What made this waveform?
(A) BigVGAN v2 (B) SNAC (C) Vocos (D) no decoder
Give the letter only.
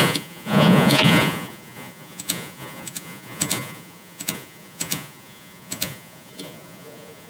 C